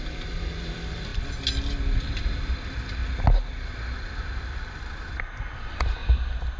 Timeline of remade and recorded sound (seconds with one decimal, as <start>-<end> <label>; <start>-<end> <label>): 0.0-1.1 remade; 1.1-2.2 recorded; 2.2-3.0 remade; 3.0-4.6 recorded; 4.6-6.0 remade; 6.0-6.6 recorded